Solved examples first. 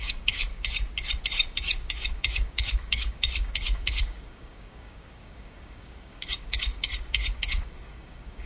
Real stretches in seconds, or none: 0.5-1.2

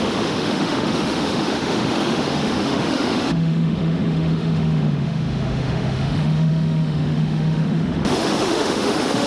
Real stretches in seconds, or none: none

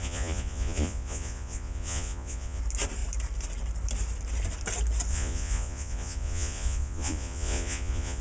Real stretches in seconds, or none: 2.6-5.1